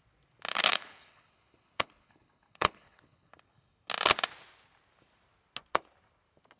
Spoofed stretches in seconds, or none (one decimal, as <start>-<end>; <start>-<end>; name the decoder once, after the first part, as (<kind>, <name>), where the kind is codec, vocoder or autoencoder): 0.5-3.3 (codec, HILCodec)